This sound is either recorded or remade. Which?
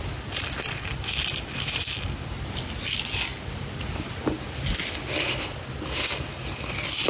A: recorded